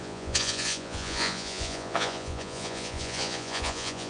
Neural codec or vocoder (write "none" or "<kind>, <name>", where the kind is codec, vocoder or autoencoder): vocoder, Vocos